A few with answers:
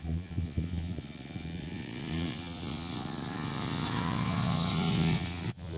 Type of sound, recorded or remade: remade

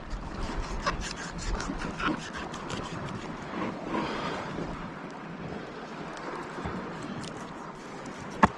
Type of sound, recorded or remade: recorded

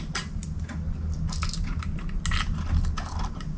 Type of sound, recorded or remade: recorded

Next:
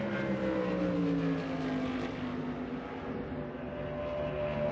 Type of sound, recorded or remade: recorded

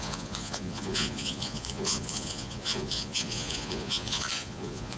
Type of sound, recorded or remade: remade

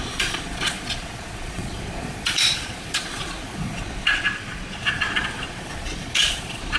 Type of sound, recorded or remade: remade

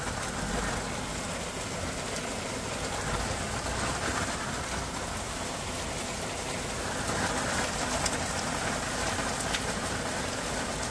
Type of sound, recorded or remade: recorded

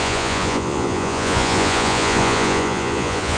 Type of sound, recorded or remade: remade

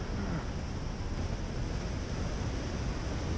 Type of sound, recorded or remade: recorded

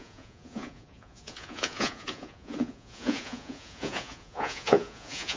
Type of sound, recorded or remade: remade